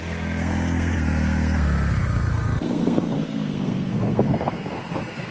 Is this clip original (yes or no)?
no